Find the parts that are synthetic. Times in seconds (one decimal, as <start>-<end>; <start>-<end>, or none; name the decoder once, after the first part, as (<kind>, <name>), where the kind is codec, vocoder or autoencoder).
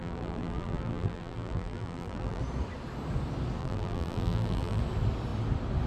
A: 0.0-2.4 (vocoder, BigVGAN v2); 3.6-4.8